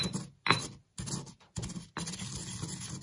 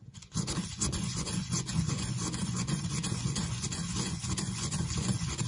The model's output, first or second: second